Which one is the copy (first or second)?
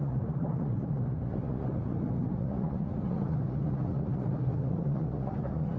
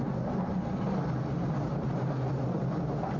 first